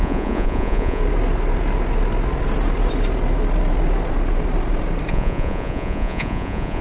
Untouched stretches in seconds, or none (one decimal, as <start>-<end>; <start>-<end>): 1.0-5.1